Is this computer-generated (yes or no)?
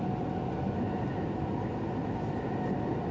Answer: no